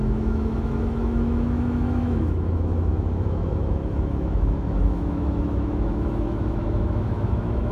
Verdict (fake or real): fake